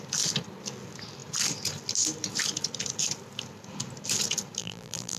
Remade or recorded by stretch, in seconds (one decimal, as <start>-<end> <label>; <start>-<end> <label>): 0.0-4.6 recorded; 4.6-5.2 remade